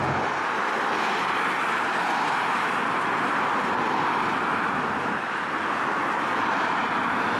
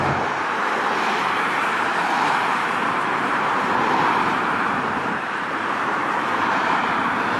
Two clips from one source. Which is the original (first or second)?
first